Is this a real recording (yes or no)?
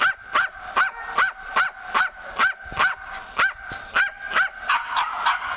yes